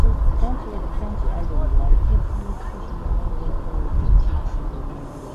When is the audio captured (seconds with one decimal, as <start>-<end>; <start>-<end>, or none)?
0.0-5.3